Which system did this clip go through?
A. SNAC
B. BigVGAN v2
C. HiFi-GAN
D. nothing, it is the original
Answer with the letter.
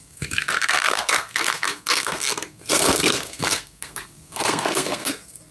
A